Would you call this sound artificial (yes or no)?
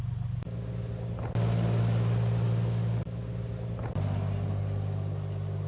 no